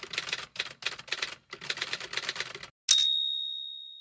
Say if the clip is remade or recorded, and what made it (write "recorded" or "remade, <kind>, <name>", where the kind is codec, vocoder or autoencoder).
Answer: recorded